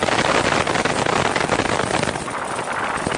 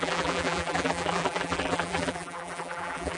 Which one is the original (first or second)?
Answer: first